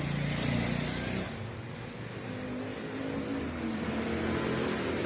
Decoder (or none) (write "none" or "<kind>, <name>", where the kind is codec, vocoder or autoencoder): none